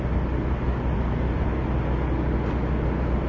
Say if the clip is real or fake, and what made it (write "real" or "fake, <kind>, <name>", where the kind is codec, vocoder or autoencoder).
real